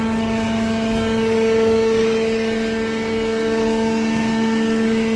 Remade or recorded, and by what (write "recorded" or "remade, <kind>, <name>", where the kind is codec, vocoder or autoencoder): remade, codec, DAC